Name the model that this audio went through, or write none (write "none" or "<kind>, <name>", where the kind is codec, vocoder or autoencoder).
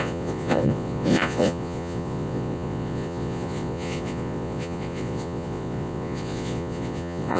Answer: vocoder, Vocos